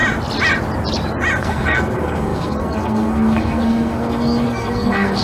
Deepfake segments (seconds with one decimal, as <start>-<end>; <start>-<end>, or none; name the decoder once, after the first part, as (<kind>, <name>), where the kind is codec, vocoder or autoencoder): 1.4-5.2 (codec, SNAC)